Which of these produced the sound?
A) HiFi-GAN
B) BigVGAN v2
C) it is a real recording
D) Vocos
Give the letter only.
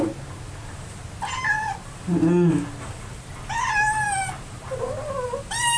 C